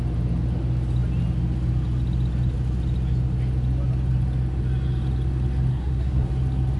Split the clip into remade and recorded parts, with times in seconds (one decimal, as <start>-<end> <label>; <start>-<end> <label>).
0.0-5.7 recorded; 5.7-6.3 remade; 6.3-6.8 recorded